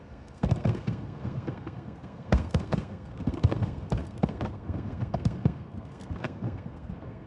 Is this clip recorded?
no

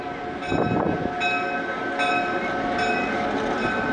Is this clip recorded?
yes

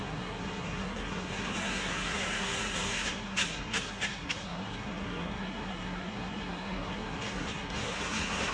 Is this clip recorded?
no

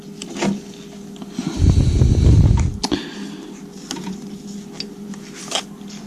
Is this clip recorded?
yes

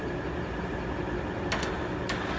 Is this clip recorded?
yes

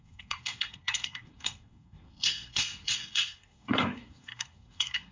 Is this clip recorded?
no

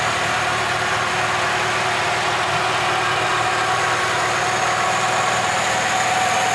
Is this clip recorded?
yes